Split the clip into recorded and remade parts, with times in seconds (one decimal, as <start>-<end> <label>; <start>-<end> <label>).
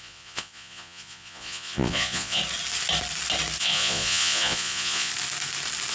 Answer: 0.0-2.4 remade; 2.4-3.6 recorded; 3.6-5.1 remade; 5.1-5.9 recorded